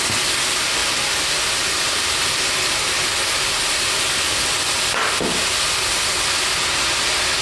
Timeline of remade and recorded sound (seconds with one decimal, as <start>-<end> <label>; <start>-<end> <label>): 0.0-0.8 recorded; 0.8-3.0 remade; 3.0-7.4 recorded